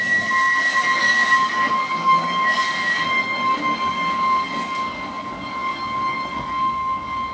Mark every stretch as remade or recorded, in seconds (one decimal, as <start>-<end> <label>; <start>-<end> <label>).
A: 0.0-7.3 remade